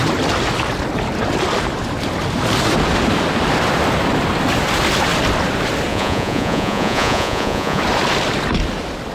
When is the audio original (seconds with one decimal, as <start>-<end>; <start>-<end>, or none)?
0.0-5.9; 7.8-9.1